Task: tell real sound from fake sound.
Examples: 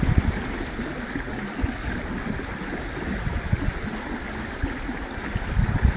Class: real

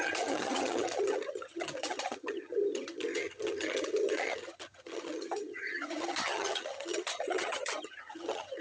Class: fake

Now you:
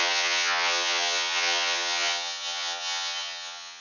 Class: fake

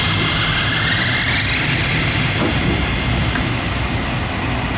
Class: real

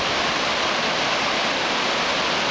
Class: real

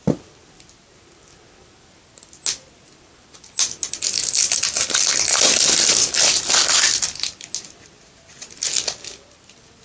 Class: real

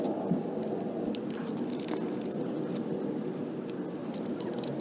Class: real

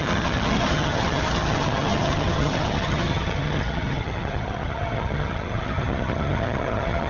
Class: fake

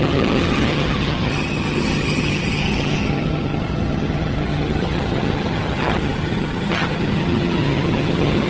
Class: fake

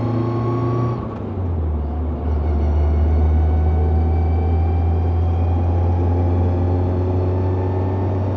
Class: real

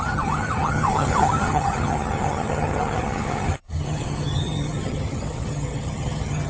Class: fake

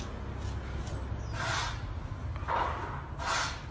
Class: real